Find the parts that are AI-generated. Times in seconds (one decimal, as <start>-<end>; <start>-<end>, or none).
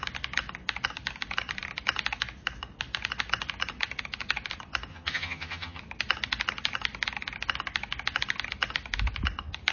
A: 4.9-5.8